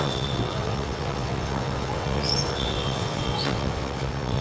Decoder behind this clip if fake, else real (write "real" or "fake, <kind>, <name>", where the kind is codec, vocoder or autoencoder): fake, vocoder, WaveNeXt